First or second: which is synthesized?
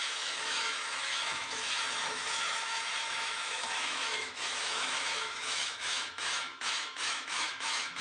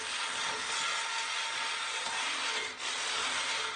first